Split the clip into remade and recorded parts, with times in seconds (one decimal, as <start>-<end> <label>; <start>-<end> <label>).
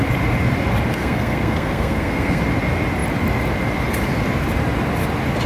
0.0-1.0 recorded; 1.0-2.4 remade; 2.4-5.5 recorded